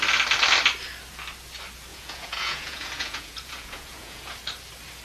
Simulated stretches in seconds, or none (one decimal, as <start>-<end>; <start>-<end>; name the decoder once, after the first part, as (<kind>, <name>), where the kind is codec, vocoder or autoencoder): 1.9-4.3 (vocoder, Vocos)